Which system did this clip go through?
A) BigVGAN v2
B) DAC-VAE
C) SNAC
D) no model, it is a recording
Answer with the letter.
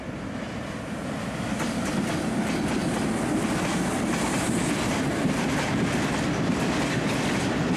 D